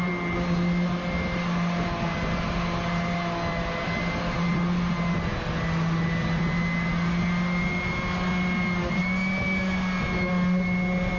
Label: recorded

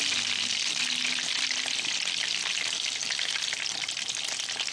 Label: recorded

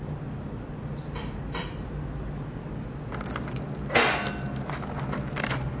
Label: recorded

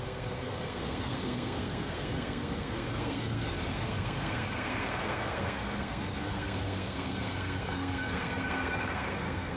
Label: remade